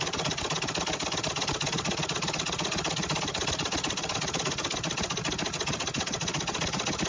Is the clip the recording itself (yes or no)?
yes